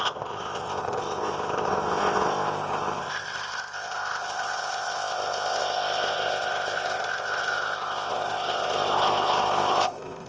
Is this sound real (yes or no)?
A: no